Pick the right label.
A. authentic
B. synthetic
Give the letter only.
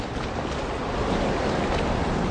A